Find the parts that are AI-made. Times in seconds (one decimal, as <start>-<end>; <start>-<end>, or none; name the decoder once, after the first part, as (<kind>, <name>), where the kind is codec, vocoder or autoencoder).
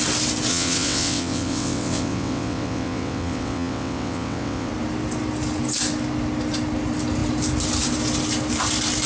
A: 0.5-4.7 (vocoder, WaveNeXt)